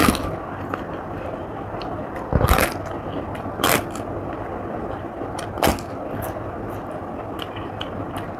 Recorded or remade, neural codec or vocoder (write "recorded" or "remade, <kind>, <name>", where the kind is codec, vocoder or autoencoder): recorded